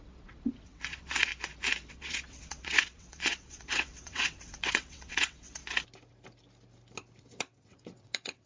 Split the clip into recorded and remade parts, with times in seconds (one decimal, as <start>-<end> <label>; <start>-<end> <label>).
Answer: 0.0-1.3 remade; 1.3-1.9 recorded; 1.9-5.6 remade; 5.6-7.2 recorded; 7.2-8.5 remade